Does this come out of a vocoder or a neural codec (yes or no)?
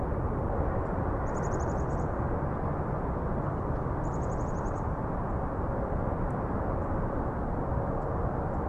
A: no